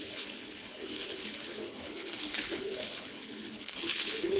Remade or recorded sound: remade